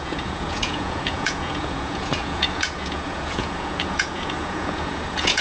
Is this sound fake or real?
fake